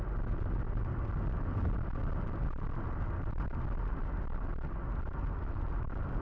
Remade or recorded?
recorded